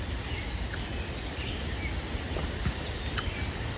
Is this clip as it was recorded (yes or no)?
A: yes